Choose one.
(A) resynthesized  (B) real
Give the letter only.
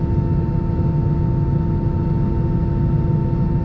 B